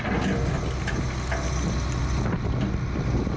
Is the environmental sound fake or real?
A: real